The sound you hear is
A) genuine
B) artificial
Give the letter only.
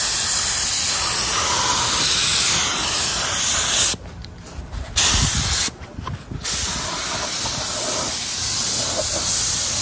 A